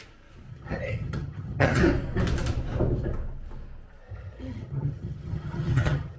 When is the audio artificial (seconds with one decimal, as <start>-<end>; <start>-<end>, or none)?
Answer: 0.5-1.8; 4.1-6.2

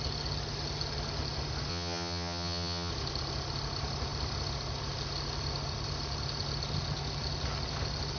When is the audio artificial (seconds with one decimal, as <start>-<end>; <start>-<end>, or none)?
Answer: 1.7-2.9

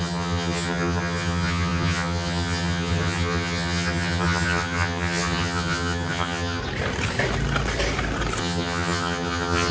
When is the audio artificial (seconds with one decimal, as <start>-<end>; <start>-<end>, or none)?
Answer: 0.0-6.6; 8.4-9.7

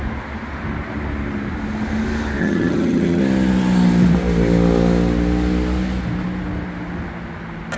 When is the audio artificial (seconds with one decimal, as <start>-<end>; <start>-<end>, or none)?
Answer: 2.4-3.2

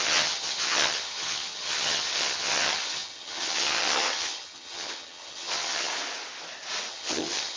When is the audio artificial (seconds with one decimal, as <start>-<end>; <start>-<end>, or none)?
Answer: 0.0-5.9; 6.9-7.6

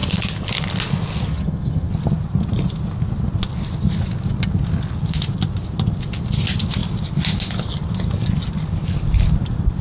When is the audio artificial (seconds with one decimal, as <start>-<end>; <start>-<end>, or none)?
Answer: 1.3-1.9

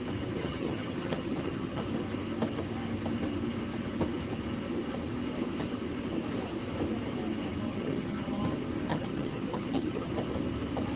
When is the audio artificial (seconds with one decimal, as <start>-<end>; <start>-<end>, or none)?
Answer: 0.4-1.8; 7.7-8.4; 8.9-10.1